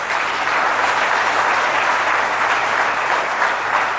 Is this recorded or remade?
recorded